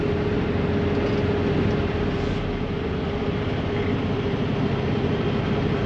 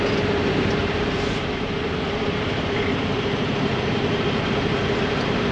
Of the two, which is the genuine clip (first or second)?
first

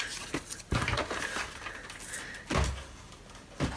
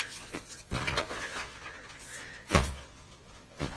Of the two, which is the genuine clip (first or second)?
first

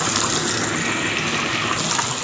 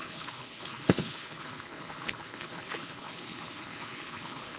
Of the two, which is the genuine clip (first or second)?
first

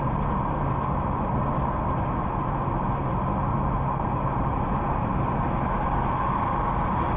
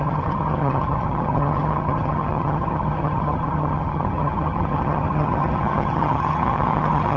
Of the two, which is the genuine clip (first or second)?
first